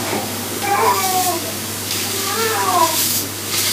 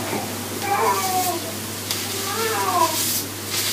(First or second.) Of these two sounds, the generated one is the first